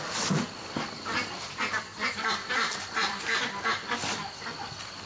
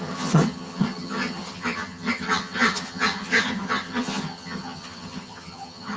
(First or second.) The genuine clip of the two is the first